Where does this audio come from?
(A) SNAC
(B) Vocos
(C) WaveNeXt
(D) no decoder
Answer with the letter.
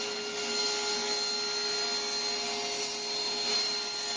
D